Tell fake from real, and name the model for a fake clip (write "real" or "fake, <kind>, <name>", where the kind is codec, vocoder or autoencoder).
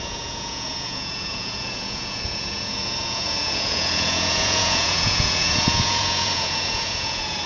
fake, vocoder, Vocos